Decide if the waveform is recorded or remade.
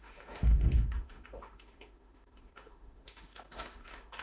remade